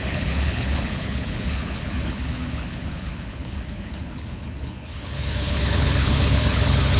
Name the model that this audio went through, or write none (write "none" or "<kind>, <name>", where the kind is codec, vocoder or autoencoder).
codec, HILCodec